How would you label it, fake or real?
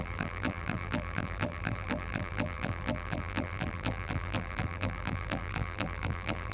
fake